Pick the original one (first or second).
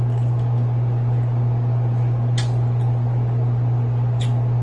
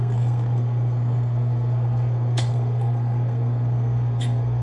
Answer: first